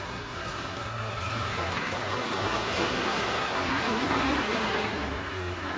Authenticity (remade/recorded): remade